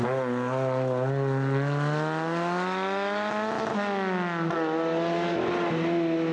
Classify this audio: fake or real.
real